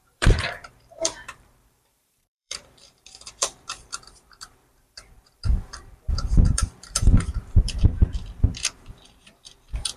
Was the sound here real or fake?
fake